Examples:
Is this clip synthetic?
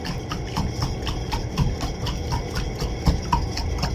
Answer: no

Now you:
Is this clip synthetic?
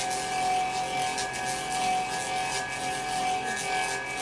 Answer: no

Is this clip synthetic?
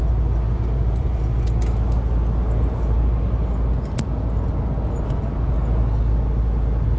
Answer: no